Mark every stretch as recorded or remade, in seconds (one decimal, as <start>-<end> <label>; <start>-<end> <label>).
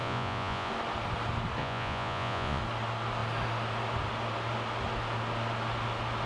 0.0-0.7 remade; 0.7-1.6 recorded; 1.6-2.6 remade; 2.6-6.3 recorded